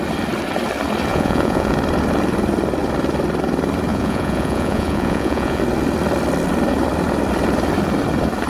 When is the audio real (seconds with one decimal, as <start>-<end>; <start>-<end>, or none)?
0.0-1.1; 1.7-3.9; 5.6-8.5

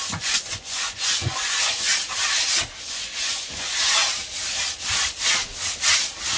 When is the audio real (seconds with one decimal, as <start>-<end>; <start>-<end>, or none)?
1.9-2.8; 4.0-6.4